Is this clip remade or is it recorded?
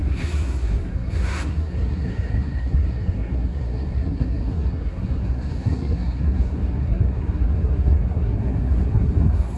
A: remade